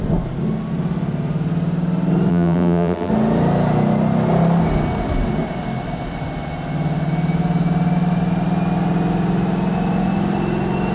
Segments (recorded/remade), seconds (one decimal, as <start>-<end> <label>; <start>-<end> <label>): 0.0-2.3 recorded; 2.3-3.1 remade; 3.1-10.9 recorded